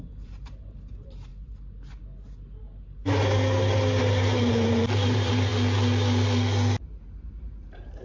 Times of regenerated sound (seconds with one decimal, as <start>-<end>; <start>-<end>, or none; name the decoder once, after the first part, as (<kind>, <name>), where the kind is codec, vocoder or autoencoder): 0.0-1.3 (vocoder, BigVGAN v2); 4.0-5.5; 7.5-8.0